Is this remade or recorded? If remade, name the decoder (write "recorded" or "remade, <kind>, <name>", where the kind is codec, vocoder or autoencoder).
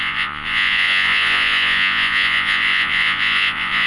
remade, vocoder, Vocos